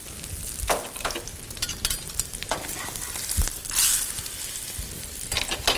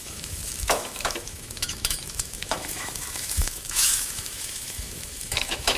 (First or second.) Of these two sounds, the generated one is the second